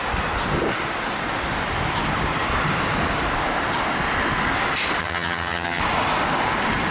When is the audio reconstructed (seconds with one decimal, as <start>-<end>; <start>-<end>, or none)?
5.0-5.8